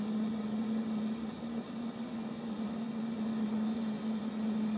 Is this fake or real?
real